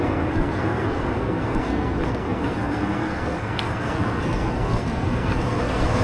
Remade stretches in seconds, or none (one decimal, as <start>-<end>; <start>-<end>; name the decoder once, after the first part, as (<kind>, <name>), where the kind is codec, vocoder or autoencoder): 0.0-6.0 (codec, SNAC)